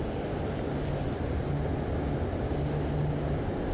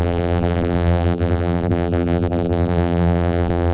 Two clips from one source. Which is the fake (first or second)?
second